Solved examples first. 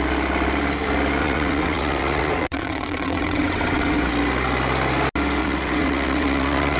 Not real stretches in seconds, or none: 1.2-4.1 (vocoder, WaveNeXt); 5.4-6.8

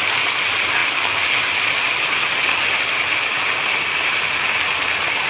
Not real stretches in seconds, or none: none

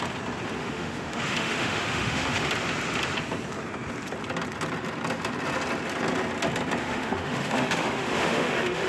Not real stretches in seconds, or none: 0.6-2.5 (autoencoder, DAC-VAE); 6.8-8.9

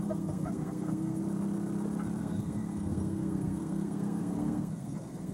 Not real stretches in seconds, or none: 0.0-1.2 (codec, SNAC); 2.2-5.3

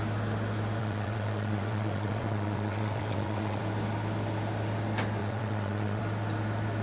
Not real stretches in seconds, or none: 0.8-3.6 (vocoder, WaveNeXt); 5.2-6.0